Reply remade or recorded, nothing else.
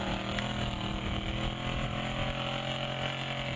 recorded